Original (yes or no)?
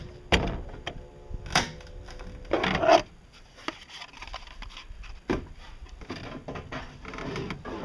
yes